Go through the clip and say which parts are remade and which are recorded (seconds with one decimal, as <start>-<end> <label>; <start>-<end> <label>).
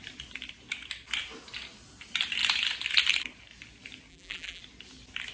0.0-4.1 recorded; 4.1-4.6 remade; 4.6-5.3 recorded